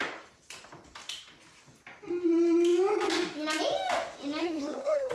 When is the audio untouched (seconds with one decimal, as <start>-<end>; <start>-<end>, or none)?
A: 0.0-4.4